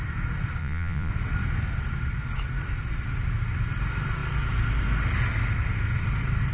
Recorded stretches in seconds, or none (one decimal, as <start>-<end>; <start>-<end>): 0.0-0.6; 1.1-6.5